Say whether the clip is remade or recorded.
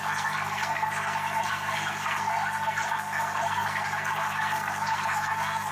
remade